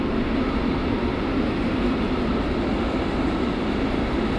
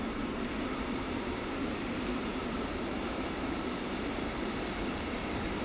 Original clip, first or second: first